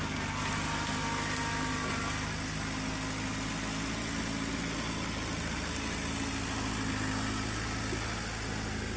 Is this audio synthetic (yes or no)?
no